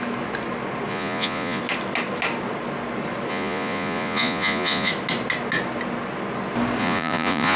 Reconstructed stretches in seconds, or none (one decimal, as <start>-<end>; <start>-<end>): 0.9-1.6; 3.3-4.9; 6.8-7.6